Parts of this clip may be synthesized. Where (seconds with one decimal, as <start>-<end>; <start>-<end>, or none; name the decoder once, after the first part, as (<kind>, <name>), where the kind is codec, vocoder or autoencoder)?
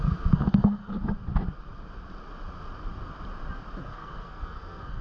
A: 0.0-0.8 (codec, SNAC); 3.8-5.0